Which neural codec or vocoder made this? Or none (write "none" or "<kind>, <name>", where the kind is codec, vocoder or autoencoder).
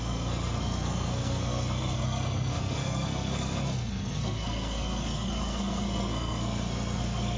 codec, SNAC